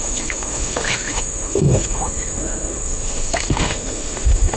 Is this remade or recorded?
remade